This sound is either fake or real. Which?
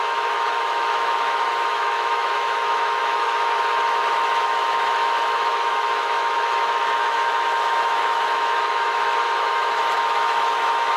fake